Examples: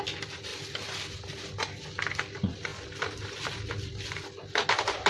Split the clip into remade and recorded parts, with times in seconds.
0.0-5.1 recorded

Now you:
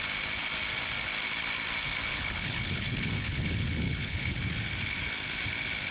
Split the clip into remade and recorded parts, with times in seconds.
0.0-2.1 recorded; 2.1-4.4 remade; 4.4-5.9 recorded

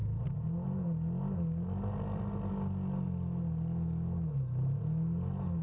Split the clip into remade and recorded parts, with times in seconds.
0.0-5.6 recorded

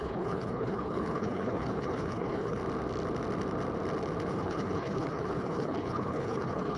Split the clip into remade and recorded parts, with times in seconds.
0.0-2.6 remade; 2.6-4.3 recorded; 4.3-6.8 remade

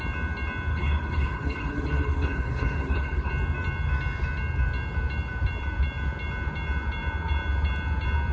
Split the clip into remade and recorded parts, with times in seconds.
0.0-0.7 recorded; 0.7-3.3 remade; 3.3-8.3 recorded

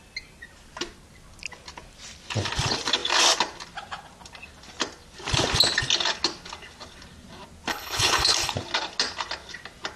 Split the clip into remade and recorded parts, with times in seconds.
0.0-7.7 recorded; 7.7-8.5 remade; 8.5-10.0 recorded

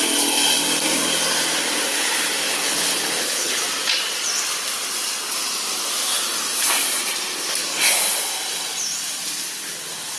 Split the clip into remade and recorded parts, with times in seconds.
0.0-1.9 recorded; 1.9-3.6 remade; 3.6-10.2 recorded